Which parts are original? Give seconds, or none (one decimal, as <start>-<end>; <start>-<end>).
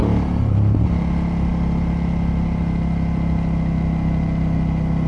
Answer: 0.0-5.1